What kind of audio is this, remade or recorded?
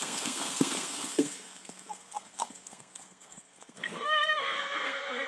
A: remade